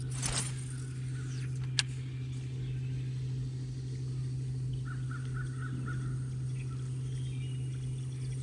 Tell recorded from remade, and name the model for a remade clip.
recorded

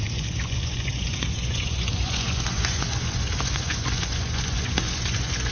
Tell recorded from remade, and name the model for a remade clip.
remade, vocoder, Vocos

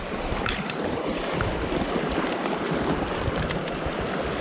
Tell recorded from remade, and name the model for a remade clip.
recorded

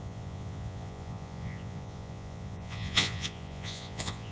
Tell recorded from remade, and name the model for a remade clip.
remade, vocoder, Vocos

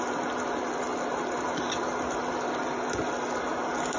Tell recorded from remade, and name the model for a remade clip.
recorded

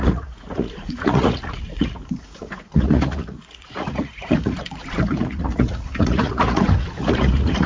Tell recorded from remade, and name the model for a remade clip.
remade, vocoder, Vocos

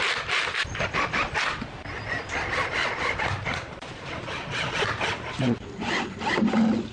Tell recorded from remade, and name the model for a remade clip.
recorded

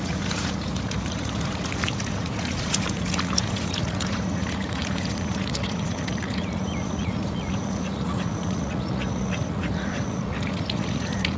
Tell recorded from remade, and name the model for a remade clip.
remade, vocoder, Vocos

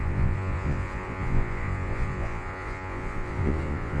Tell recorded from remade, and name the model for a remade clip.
remade, vocoder, Vocos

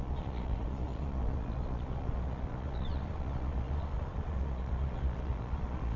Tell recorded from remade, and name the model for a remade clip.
remade, vocoder, Vocos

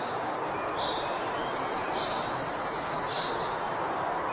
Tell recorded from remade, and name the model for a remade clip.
recorded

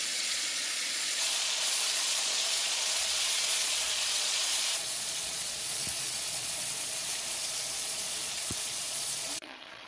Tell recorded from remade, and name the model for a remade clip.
remade, vocoder, Vocos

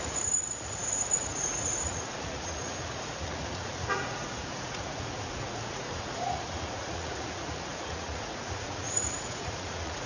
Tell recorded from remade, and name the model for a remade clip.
remade, vocoder, Vocos